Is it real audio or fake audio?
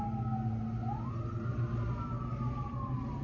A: real